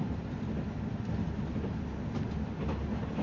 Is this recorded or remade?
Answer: recorded